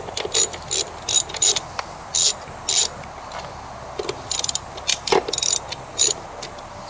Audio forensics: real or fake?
real